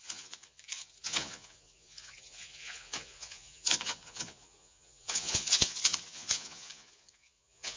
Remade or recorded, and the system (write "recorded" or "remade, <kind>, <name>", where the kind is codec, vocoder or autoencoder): remade, vocoder, Vocos